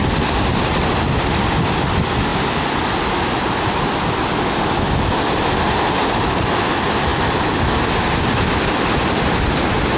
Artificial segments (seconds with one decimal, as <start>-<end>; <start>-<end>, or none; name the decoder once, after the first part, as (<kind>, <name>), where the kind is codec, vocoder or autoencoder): none